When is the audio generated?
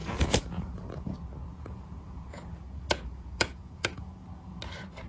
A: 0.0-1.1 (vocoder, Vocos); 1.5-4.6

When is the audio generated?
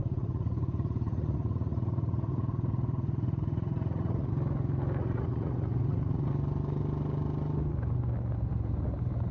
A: 0.0-4.3 (vocoder, Vocos); 5.0-6.3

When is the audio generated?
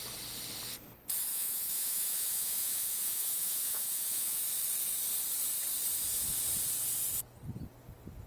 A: 1.3-4.4 (vocoder, Vocos)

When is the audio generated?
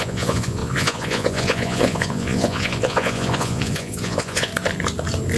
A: 0.0-4.5 (vocoder, Vocos)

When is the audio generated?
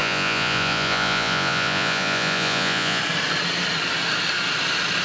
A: 0.0-3.0 (vocoder, Vocos)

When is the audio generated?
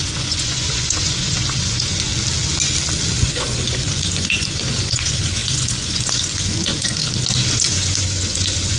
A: 0.0-2.1 (vocoder, Vocos); 3.1-7.0; 7.5-8.8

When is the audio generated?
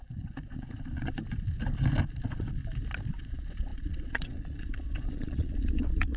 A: 0.0-1.2 (vocoder, Vocos); 2.2-2.6; 3.1-6.2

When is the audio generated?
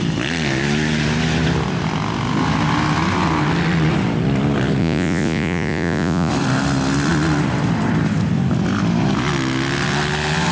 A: 4.8-6.3 (vocoder, Vocos)